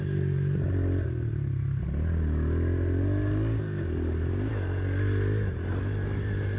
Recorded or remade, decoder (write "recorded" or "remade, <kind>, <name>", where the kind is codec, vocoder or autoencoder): recorded